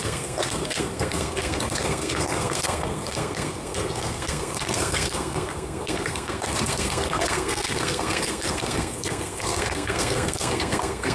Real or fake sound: fake